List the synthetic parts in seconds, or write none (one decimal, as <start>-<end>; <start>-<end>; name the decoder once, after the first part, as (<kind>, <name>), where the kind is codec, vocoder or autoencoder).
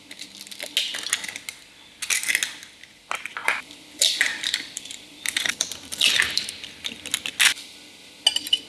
3.4-6.1 (vocoder, BigVGAN v2)